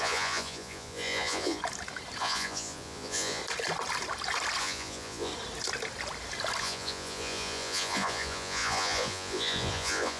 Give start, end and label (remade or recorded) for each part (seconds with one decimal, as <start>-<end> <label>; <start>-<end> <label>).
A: 0.0-1.6 remade; 1.6-2.2 recorded; 2.2-3.4 remade; 3.4-4.6 recorded; 4.6-5.3 remade; 5.3-6.6 recorded; 6.6-10.2 remade